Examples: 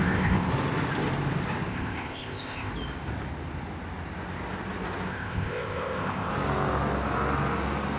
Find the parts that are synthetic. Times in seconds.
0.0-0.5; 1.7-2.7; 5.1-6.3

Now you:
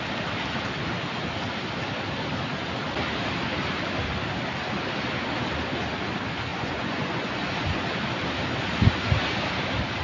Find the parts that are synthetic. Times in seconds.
6.5-7.5

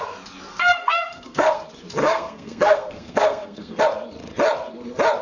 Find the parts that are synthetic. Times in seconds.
0.5-1.6; 2.0-3.8

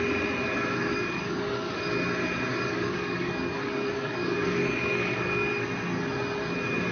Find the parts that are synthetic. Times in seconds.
0.8-1.9; 2.5-5.5

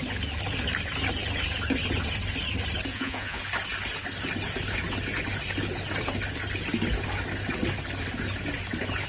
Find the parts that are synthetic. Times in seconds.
2.9-3.4

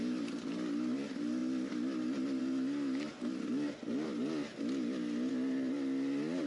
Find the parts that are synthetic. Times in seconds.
none